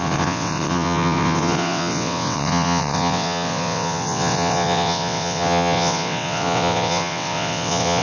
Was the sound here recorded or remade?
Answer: remade